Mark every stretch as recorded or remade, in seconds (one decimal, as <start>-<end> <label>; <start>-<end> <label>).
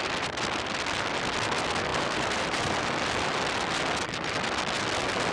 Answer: 0.0-1.9 recorded; 1.9-3.4 remade; 3.4-5.3 recorded